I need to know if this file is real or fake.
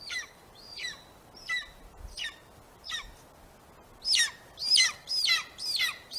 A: real